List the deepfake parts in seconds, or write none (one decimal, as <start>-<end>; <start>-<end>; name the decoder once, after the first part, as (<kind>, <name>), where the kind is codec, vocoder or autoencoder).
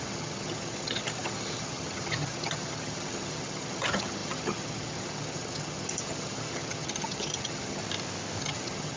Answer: 0.0-7.8 (vocoder, HiFi-GAN); 8.4-9.0